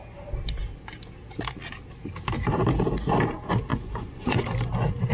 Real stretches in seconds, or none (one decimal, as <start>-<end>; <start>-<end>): 0.0-3.7; 4.4-5.1